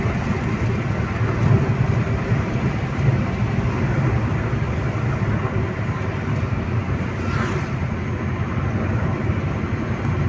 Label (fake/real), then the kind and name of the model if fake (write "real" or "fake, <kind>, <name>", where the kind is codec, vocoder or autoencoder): real